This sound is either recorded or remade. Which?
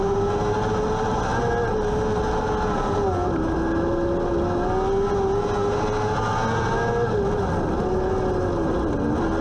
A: recorded